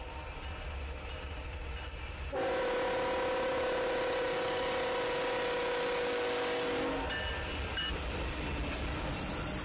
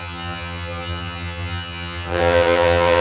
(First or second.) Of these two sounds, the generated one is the second